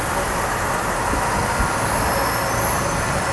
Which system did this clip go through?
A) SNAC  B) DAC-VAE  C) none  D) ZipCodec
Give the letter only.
C